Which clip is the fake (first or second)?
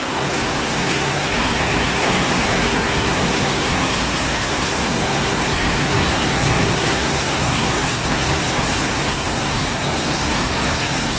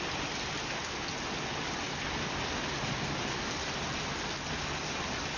first